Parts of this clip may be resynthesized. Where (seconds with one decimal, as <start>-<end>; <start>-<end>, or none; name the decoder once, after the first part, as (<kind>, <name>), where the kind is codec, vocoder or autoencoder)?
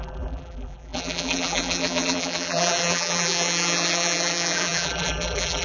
0.0-5.6 (vocoder, BigVGAN v2)